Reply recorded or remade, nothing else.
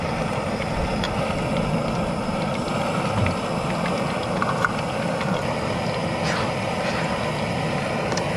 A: recorded